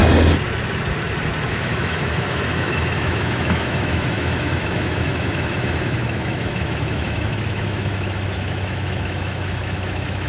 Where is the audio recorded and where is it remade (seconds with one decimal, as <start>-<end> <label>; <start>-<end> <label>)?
0.0-1.5 recorded; 1.5-10.3 remade